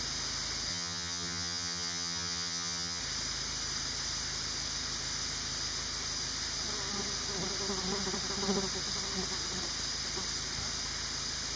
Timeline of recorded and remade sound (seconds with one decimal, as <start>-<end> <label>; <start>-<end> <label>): 0.0-0.7 recorded; 0.7-3.0 remade; 3.0-11.6 recorded